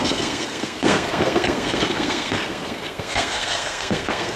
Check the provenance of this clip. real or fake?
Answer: fake